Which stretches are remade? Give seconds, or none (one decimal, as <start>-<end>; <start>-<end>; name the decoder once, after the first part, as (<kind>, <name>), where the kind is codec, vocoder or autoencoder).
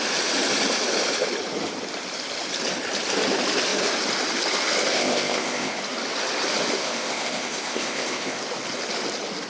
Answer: 4.9-5.8 (codec, ZipCodec); 6.8-8.4